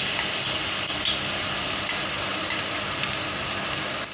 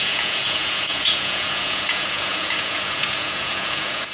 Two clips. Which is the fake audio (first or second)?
second